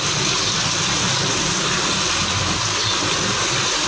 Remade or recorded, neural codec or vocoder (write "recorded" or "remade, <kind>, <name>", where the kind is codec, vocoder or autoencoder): recorded